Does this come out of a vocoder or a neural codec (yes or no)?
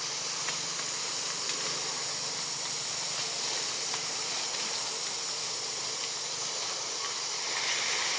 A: no